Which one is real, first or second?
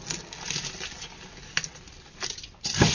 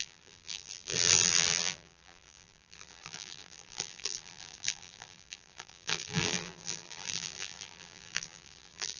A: first